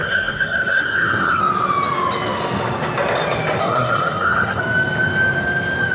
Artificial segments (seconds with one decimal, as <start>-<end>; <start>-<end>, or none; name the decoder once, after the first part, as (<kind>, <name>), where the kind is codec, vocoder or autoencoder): 0.0-1.4 (codec, SNAC); 3.6-4.6